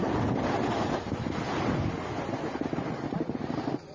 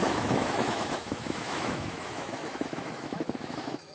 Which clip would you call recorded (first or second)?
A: first